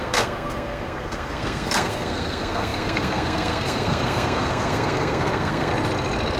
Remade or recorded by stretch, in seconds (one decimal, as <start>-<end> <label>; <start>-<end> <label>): 0.0-5.7 remade; 5.7-6.4 recorded